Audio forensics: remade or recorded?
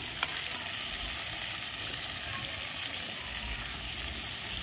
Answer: recorded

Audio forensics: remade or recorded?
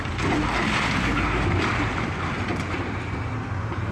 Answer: recorded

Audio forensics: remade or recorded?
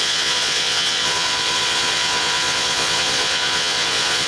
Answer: remade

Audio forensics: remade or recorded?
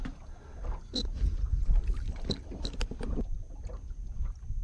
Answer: recorded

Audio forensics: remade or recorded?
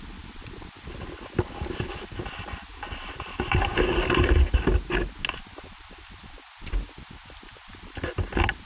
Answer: recorded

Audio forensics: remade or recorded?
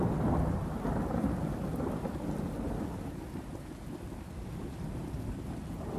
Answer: recorded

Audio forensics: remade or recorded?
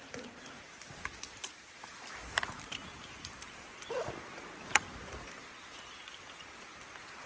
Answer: recorded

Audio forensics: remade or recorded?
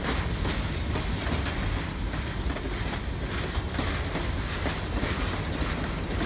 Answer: recorded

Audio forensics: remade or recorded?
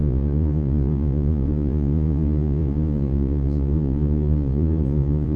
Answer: remade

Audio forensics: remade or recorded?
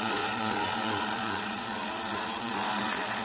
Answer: remade